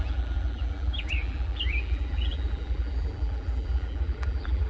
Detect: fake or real fake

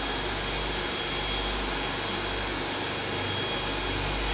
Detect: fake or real real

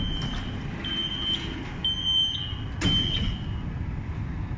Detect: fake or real real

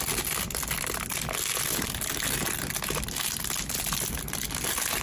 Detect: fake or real real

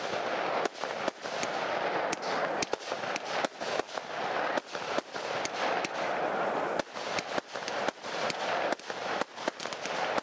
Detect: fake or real real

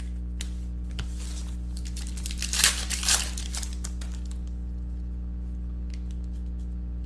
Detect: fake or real real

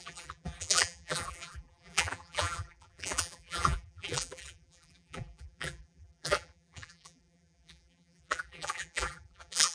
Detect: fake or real fake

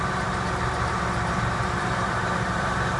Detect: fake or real fake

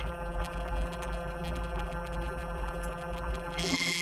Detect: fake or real fake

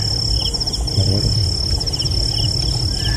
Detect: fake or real real